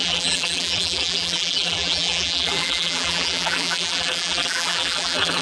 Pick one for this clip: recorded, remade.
remade